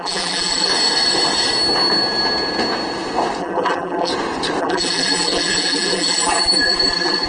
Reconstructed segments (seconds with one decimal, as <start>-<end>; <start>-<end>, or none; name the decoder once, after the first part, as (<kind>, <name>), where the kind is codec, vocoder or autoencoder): 0.0-0.7 (vocoder, BigVGAN v2); 3.4-4.1; 4.6-7.3